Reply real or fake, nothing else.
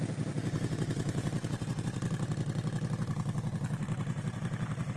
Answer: fake